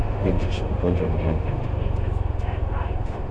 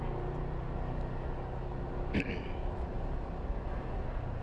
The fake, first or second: first